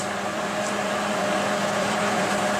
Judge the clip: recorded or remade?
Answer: remade